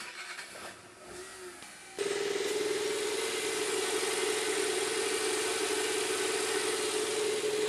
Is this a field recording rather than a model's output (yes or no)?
yes